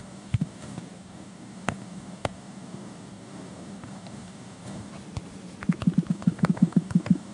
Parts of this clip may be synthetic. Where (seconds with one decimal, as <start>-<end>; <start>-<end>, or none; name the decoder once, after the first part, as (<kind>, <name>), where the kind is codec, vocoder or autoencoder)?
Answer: 0.0-4.9 (codec, DAC); 6.1-7.3